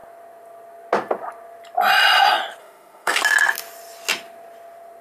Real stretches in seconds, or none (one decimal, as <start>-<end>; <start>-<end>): 0.0-2.6; 3.2-5.0